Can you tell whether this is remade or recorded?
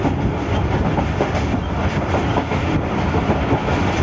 recorded